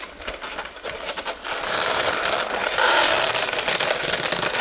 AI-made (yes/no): no